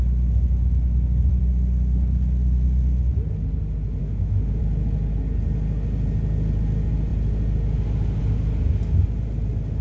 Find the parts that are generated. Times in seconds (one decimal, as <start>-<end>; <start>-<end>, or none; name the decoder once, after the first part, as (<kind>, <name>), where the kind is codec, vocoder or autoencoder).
4.0-4.6 (autoencoder, DAC-VAE)